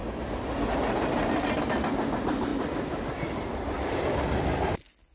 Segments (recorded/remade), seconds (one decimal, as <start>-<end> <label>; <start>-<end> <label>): 0.0-5.1 recorded